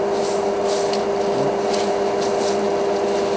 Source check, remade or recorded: recorded